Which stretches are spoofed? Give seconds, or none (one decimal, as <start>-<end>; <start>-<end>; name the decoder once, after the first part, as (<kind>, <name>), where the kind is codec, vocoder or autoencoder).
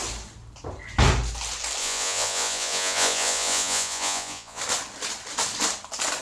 1.8-4.6 (vocoder, Vocos)